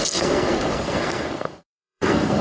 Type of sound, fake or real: fake